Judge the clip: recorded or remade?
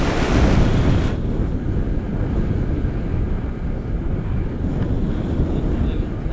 recorded